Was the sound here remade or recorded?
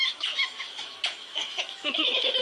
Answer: remade